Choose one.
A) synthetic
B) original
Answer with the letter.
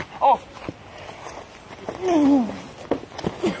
B